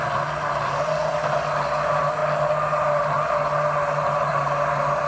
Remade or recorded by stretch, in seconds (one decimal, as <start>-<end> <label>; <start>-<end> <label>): 0.0-5.1 recorded